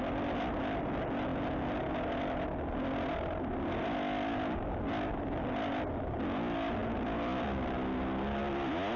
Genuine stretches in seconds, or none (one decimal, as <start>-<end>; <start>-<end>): 0.0-9.0